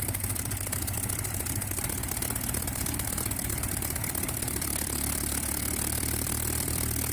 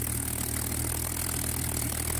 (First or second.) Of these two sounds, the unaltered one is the second